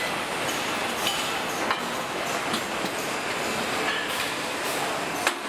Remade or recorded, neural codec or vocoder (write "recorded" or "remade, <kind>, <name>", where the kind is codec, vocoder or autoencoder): recorded